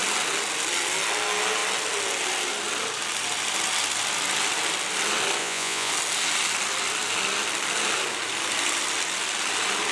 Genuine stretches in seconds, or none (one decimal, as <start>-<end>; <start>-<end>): 0.0-5.4; 5.9-9.9